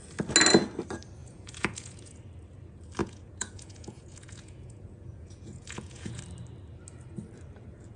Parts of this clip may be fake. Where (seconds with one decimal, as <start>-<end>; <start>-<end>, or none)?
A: 1.2-2.2; 3.0-6.2